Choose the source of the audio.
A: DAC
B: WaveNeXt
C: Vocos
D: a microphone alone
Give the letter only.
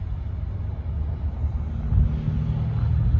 D